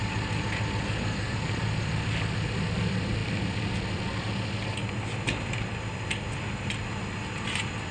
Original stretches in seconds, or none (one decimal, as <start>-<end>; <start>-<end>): 0.0-7.9